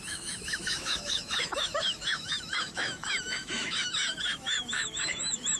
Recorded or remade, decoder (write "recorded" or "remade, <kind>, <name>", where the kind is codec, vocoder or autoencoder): remade, autoencoder, DAC-VAE